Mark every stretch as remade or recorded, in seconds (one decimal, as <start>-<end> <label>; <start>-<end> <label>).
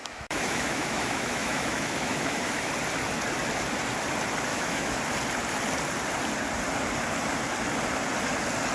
0.0-2.7 remade; 2.7-4.5 recorded; 4.5-5.0 remade; 5.0-8.7 recorded